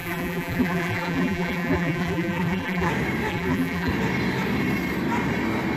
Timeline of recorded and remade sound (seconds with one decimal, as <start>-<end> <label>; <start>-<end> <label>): 0.0-2.9 remade; 2.9-3.3 recorded; 3.3-3.9 remade; 3.9-5.8 recorded

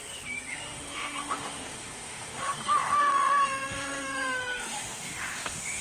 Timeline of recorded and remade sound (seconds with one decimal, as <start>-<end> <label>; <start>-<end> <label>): 0.0-0.5 recorded; 0.5-5.8 remade

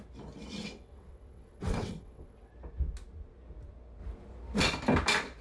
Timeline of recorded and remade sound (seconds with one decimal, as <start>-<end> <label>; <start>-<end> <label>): 0.0-0.6 recorded; 0.6-2.5 remade; 2.5-5.4 recorded

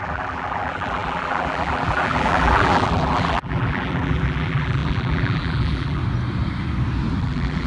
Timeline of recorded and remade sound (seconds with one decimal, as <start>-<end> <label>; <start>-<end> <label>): 0.0-6.0 remade; 6.0-7.2 recorded; 7.2-7.7 remade

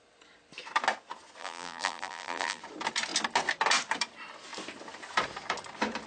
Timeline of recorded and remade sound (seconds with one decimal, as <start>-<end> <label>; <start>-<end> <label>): 0.0-1.4 recorded; 1.4-2.6 remade; 2.6-6.1 recorded

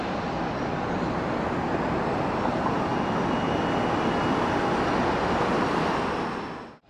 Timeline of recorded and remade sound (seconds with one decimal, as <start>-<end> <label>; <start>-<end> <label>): 0.0-6.9 recorded

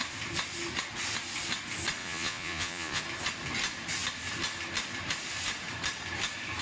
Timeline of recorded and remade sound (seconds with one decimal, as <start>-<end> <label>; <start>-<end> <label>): 0.0-2.0 recorded; 2.0-3.0 remade; 3.0-6.6 recorded